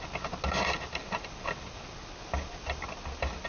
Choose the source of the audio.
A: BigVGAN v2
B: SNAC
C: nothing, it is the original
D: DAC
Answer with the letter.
C